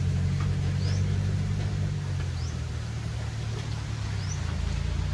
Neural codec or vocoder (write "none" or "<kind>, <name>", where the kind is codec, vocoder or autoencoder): none